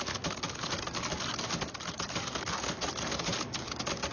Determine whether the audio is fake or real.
real